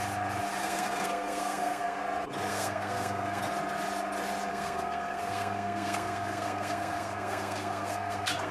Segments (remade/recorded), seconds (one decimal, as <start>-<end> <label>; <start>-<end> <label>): 0.0-0.6 recorded; 0.6-2.0 remade; 2.0-2.5 recorded; 2.5-3.4 remade; 3.4-4.5 recorded; 4.5-8.5 remade